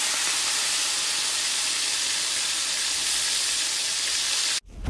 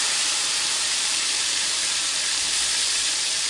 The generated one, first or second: second